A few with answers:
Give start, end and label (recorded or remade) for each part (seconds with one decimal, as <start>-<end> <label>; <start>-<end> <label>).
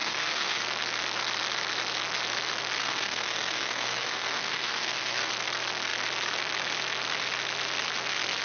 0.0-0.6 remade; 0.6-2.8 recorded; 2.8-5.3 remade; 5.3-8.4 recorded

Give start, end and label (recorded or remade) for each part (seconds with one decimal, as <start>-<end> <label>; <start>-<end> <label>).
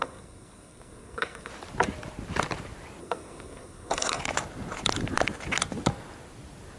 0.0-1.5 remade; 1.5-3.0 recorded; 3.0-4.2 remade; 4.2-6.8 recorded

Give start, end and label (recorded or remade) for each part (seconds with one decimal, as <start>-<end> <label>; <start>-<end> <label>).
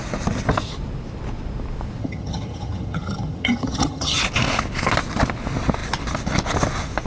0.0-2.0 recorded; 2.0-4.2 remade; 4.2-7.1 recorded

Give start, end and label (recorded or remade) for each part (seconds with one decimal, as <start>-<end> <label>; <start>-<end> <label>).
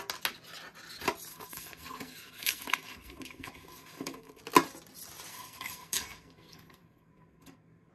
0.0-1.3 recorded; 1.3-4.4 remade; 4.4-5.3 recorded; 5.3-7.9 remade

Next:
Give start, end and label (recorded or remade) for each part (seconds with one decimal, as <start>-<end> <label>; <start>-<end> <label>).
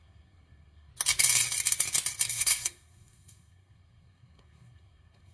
0.0-0.9 remade; 0.9-2.3 recorded; 2.3-5.3 remade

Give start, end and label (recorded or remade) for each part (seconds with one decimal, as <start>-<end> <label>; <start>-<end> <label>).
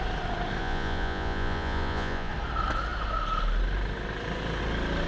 0.0-0.6 recorded; 0.6-2.3 remade; 2.3-5.1 recorded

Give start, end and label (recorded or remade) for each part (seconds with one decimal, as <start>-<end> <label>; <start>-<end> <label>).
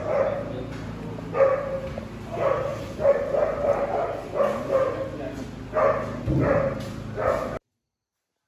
0.0-8.5 recorded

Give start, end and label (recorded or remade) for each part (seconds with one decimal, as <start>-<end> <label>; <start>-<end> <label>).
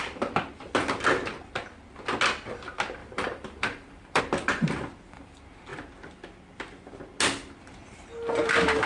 0.0-3.0 recorded; 3.0-4.2 remade; 4.2-8.9 recorded